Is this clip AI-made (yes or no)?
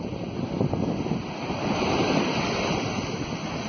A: no